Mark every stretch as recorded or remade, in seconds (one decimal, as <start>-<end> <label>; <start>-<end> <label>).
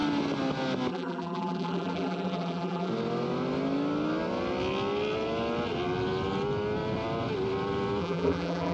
0.0-0.9 recorded; 0.9-2.9 remade; 2.9-8.0 recorded; 8.0-8.7 remade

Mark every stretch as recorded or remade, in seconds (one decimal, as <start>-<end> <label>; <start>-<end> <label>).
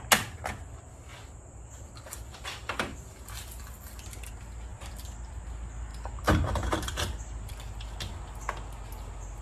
0.0-1.1 recorded; 1.1-4.3 remade; 4.3-4.7 recorded; 4.7-5.3 remade; 5.3-5.9 recorded; 5.9-7.5 remade; 7.5-9.4 recorded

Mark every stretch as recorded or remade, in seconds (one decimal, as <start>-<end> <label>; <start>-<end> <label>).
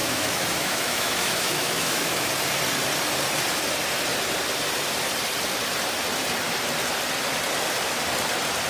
0.0-2.3 remade; 2.3-8.7 recorded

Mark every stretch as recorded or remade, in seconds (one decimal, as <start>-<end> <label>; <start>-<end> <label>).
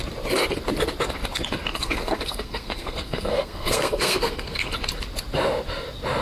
0.0-1.7 recorded; 1.7-4.7 remade; 4.7-6.2 recorded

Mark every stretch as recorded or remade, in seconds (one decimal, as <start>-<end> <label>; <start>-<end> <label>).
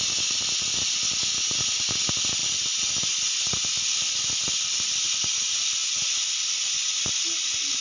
0.0-7.8 recorded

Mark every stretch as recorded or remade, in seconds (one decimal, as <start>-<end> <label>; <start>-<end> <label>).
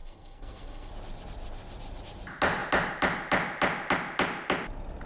0.0-0.9 remade; 0.9-5.1 recorded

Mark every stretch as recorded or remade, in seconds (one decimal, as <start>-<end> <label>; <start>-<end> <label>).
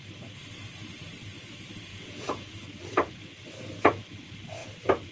0.0-1.9 recorded; 1.9-2.5 remade; 2.5-5.1 recorded